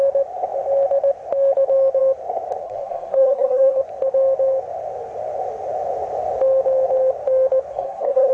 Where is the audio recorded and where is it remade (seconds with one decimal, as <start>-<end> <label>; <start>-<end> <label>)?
0.0-2.6 recorded; 2.6-3.8 remade; 3.8-7.7 recorded; 7.7-8.3 remade